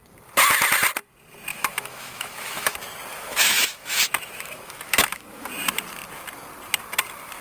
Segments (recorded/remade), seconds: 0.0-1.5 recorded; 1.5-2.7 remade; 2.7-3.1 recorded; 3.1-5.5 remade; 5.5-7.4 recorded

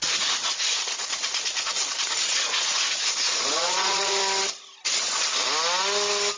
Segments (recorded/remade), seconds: 0.0-0.4 recorded; 0.4-4.2 remade; 4.2-6.4 recorded

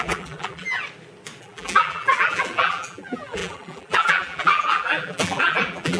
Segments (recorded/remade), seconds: 0.0-0.8 remade; 0.8-1.4 recorded; 1.4-6.0 remade

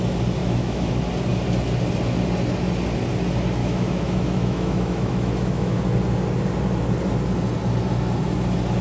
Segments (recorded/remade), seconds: 0.0-0.4 recorded; 0.4-0.9 remade; 0.9-3.6 recorded; 3.6-5.8 remade; 5.8-8.8 recorded